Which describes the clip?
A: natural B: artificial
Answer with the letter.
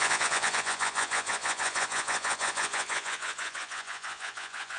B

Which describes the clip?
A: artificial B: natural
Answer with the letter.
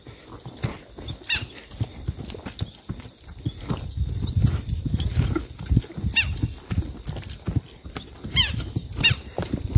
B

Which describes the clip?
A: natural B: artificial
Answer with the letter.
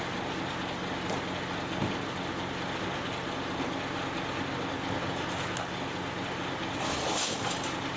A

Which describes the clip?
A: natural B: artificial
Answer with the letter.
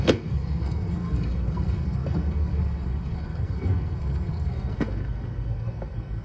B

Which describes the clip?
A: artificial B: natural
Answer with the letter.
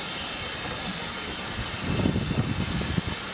B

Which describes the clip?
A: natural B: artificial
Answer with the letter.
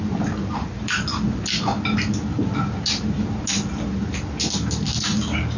A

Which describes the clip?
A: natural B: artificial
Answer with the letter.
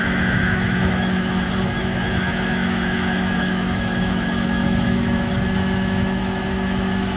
B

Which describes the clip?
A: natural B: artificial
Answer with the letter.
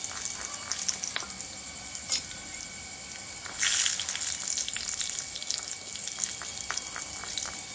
A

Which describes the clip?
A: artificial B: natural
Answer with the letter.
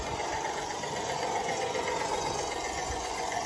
A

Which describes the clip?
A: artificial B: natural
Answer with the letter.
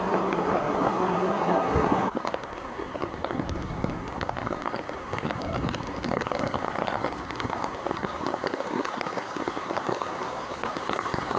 A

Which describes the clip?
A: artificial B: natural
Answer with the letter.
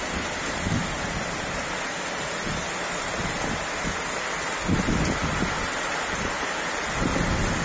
B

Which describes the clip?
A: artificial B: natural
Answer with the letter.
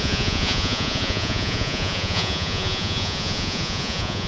A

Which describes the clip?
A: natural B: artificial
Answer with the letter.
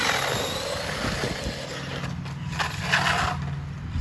A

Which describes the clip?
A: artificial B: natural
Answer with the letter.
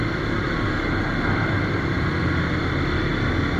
B